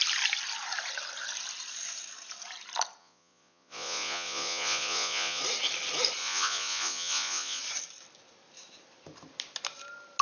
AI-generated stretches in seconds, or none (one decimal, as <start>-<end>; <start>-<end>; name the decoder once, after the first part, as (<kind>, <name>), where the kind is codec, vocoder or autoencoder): 3.0-5.4 (vocoder, Vocos); 6.2-7.6